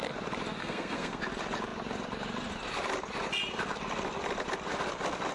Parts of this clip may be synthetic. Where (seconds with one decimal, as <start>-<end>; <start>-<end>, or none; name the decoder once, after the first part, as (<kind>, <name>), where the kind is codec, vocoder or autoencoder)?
0.6-1.2 (codec, SNAC)